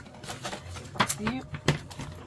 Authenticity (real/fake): real